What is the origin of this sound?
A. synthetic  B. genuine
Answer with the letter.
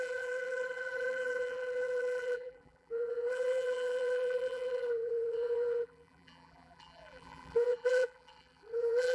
A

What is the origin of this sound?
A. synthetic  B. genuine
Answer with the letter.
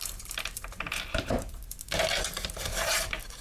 A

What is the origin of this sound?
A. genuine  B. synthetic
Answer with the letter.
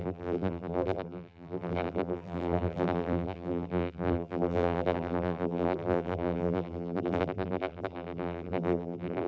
B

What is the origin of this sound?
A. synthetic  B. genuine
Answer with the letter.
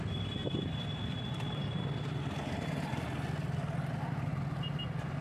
B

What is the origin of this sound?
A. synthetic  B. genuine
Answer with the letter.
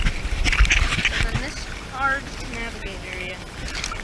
B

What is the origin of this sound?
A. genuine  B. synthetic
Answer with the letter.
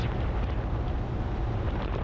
B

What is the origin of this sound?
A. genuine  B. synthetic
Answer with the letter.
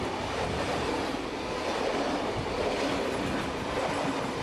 A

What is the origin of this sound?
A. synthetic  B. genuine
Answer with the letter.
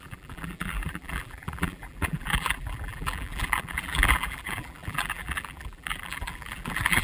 A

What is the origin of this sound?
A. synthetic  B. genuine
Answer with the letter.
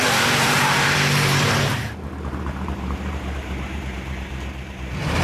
A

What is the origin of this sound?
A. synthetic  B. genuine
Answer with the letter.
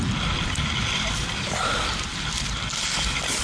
B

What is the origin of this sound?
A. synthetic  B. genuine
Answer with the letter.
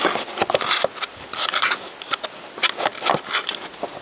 B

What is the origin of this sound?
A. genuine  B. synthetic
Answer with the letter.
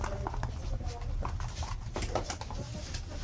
A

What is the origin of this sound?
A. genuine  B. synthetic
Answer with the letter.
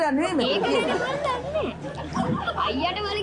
A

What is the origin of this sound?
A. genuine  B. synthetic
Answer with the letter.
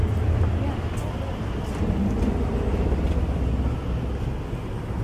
A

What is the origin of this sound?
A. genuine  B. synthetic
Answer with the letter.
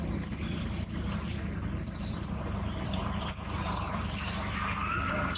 B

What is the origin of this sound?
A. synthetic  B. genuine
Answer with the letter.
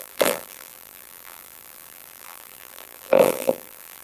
A